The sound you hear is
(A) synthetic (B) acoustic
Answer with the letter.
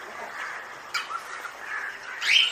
B